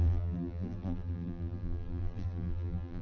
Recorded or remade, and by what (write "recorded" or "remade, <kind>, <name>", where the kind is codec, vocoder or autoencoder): remade, vocoder, BigVGAN v2